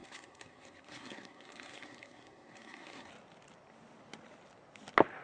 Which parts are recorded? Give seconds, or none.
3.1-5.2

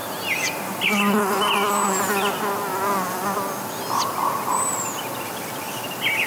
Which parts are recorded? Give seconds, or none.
0.0-6.3

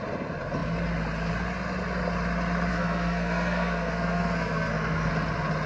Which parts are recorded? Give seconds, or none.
0.0-2.7; 5.1-5.7

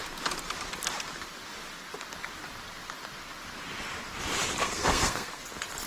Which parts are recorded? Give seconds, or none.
0.0-4.6; 5.4-5.9

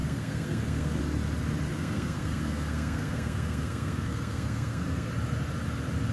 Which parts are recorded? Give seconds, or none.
1.0-1.7; 5.1-6.1

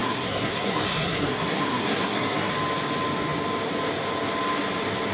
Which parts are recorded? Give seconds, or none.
2.5-5.1

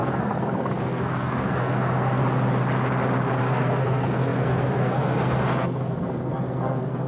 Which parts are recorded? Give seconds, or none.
2.2-3.4